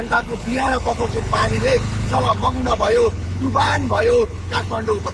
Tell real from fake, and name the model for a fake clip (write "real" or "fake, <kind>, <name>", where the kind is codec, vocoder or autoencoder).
fake, codec, HILCodec